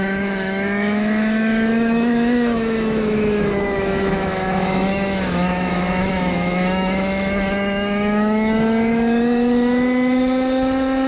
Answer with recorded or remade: remade